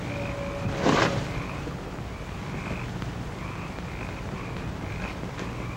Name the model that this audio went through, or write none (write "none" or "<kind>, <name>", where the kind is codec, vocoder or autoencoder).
none